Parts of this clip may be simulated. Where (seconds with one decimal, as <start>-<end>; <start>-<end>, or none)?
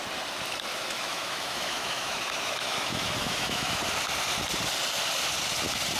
0.7-3.8